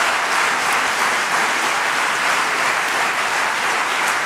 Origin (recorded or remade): remade